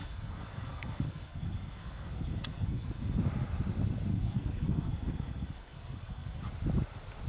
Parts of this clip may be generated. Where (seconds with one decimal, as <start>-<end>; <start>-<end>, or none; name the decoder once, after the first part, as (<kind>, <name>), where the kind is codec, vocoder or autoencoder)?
0.0-3.2 (codec, SNAC); 4.1-6.4

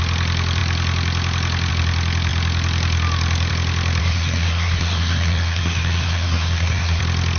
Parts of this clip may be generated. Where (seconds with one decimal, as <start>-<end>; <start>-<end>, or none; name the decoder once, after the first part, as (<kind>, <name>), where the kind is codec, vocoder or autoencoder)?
4.0-7.0 (codec, SNAC)